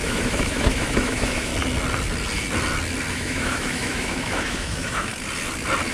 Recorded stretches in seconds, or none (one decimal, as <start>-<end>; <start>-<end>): 1.5-3.1; 5.1-5.9